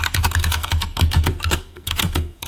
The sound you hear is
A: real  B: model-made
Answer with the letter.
B